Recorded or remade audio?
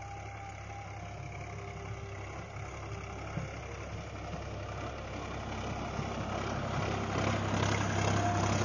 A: recorded